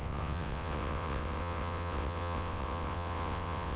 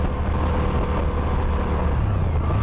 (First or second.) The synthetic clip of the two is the first